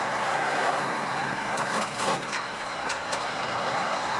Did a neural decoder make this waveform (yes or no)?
yes